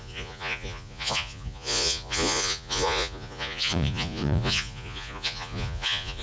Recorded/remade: remade